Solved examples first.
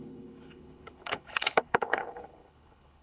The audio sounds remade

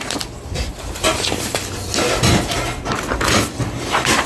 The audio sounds recorded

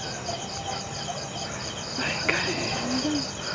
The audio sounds recorded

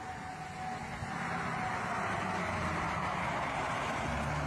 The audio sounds recorded